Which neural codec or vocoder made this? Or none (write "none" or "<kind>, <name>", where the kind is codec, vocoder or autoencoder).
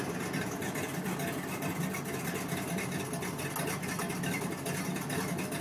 none